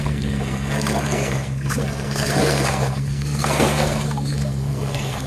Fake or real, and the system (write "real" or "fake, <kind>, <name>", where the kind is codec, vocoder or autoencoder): fake, codec, SNAC